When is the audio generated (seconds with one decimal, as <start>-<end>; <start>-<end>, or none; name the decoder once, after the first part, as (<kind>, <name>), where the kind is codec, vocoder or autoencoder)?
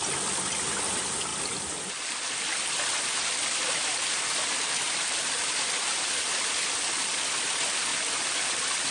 none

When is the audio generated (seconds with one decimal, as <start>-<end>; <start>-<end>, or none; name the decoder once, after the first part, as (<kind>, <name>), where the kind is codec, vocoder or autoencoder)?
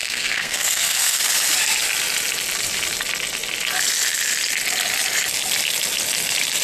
0.0-1.2 (codec, SNAC)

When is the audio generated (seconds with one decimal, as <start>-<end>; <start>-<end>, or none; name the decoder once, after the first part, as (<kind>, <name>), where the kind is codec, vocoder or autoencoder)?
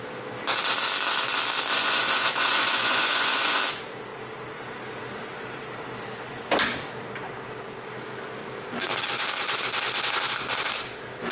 1.7-3.6 (vocoder, Vocos)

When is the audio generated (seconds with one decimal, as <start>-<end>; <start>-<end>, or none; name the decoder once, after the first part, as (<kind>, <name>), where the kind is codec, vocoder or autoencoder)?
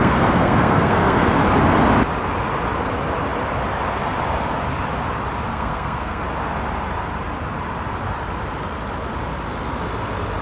0.0-1.4 (codec, SNAC); 5.5-6.2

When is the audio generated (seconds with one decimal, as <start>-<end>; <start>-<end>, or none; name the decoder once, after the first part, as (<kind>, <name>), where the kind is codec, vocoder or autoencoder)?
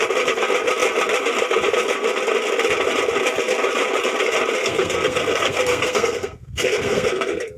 4.6-7.6 (codec, SNAC)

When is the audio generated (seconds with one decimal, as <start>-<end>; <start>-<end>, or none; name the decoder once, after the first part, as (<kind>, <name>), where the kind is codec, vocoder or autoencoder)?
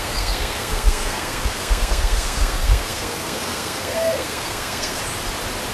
0.0-5.0 (codec, SNAC)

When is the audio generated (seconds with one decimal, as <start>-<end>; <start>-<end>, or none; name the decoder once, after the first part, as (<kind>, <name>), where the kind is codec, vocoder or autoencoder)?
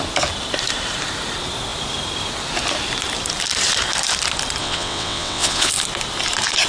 4.6-5.7 (vocoder, WaveNeXt)